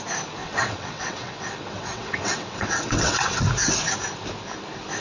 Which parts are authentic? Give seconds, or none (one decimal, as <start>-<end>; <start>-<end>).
0.0-0.4; 3.4-5.0